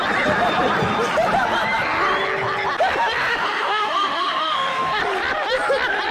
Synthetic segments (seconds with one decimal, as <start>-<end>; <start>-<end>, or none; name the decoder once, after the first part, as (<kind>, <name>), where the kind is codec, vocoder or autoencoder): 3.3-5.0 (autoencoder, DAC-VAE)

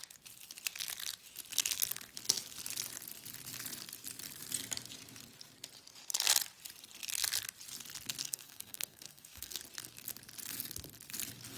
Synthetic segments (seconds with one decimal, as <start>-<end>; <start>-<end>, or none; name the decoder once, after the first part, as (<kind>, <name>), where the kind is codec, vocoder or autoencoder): 8.2-9.6 (codec, SNAC)

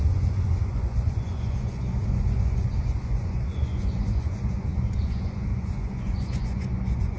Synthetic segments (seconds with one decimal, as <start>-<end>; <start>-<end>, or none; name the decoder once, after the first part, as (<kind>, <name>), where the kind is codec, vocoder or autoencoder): 0.0-7.2 (vocoder, Vocos)